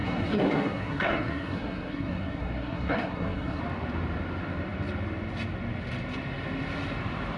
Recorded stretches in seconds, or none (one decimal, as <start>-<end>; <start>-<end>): 3.6-7.4